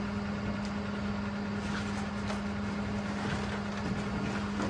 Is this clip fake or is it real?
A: real